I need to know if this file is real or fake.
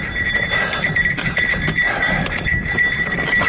fake